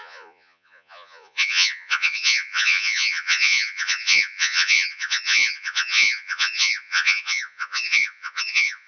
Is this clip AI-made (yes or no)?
yes